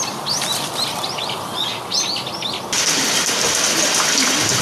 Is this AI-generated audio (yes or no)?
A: no